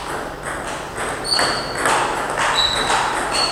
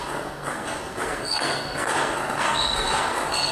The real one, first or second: first